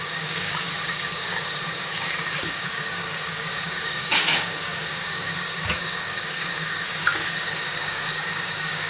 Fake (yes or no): yes